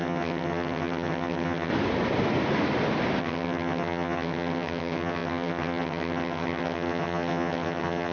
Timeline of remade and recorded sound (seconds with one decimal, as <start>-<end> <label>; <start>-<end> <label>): 0.0-1.7 remade; 1.7-3.2 recorded; 3.2-8.1 remade